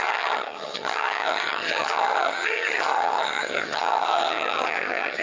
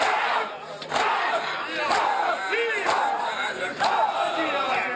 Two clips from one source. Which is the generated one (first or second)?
first